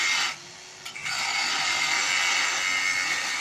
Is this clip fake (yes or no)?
no